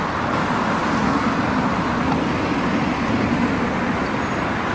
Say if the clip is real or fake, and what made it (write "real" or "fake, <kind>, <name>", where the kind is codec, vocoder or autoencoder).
real